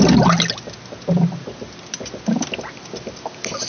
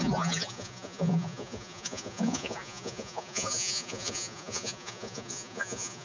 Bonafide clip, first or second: first